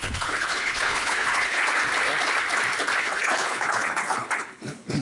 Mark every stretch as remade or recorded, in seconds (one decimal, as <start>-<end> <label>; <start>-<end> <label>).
0.0-1.6 remade; 1.6-3.0 recorded; 3.0-5.0 remade